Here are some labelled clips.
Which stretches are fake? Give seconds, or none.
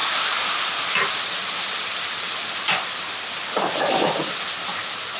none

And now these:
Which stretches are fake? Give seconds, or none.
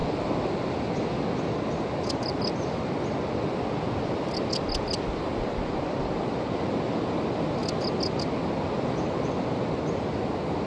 none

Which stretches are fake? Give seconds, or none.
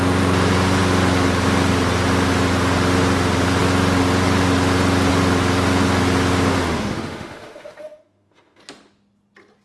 6.5-8.6 (autoencoder, DAC-VAE)